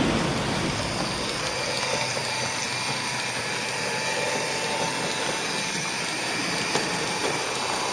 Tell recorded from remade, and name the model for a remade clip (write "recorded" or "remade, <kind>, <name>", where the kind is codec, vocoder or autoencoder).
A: remade, vocoder, BigVGAN v2